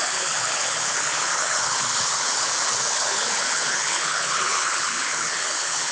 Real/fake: fake